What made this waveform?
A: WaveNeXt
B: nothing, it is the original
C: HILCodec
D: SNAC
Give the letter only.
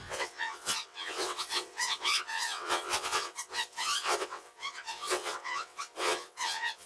A